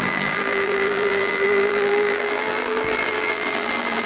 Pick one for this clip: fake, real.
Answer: fake